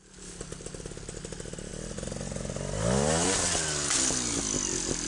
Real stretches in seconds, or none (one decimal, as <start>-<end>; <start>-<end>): 0.0-5.1